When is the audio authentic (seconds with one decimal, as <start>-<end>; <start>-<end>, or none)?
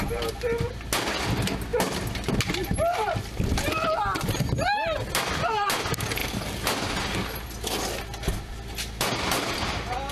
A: 0.0-10.1